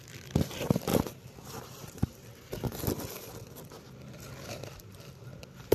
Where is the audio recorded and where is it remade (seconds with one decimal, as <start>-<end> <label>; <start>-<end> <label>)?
0.0-0.9 remade; 0.9-4.3 recorded; 4.3-5.7 remade